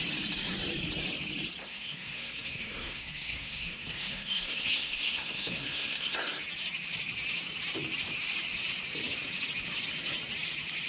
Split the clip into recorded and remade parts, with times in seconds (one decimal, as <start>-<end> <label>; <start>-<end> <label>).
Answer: 0.0-1.6 recorded; 1.6-6.2 remade; 6.2-10.9 recorded